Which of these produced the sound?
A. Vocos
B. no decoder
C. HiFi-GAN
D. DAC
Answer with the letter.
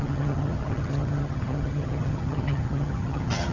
C